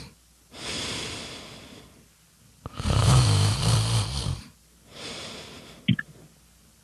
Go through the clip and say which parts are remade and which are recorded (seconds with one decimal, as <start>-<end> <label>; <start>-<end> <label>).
0.0-3.0 recorded; 3.0-3.6 remade; 3.6-6.8 recorded